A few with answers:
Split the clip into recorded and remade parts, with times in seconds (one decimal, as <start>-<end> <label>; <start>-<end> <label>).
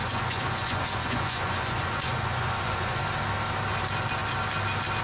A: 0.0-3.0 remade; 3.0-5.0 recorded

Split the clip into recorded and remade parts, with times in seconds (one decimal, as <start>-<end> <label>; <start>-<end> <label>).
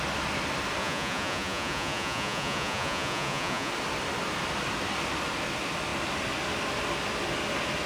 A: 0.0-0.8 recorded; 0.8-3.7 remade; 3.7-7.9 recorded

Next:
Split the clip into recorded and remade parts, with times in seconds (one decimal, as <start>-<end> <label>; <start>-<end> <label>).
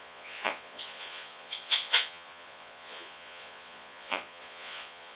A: 0.0-5.1 remade